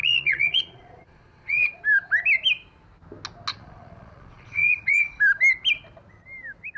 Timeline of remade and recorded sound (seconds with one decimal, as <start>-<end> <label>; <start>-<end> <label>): 0.0-1.8 remade; 1.8-3.5 recorded; 3.5-5.2 remade; 5.2-6.8 recorded